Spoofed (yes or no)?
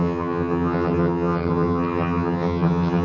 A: yes